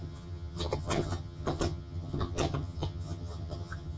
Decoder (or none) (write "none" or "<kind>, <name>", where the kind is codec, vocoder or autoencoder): vocoder, HiFi-GAN